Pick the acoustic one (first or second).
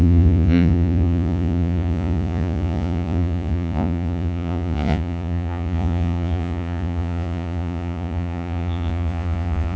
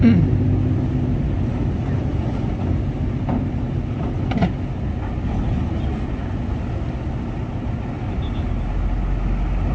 second